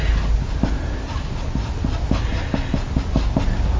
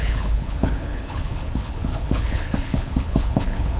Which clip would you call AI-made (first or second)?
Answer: second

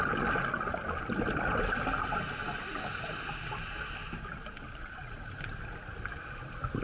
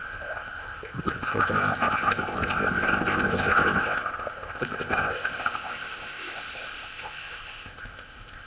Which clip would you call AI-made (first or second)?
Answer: second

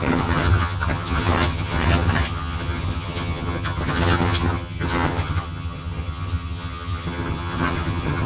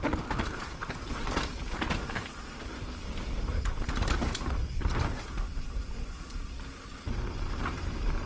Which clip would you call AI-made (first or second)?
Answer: first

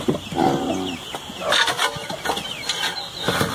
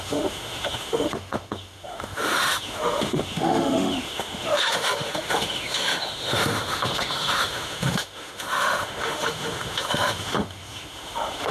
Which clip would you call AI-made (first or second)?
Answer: second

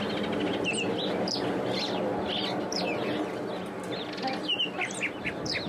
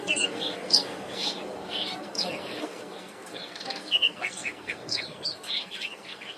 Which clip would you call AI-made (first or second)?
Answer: second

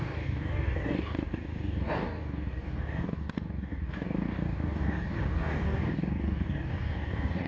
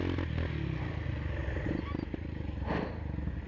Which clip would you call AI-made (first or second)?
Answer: first